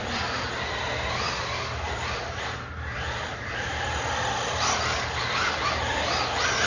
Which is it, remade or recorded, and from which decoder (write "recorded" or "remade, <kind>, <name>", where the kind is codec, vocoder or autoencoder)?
recorded